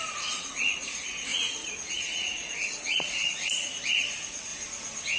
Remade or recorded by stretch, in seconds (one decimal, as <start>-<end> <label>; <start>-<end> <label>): 0.0-4.5 remade; 4.5-5.2 recorded